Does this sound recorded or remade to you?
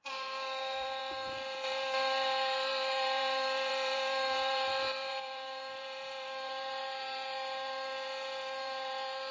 remade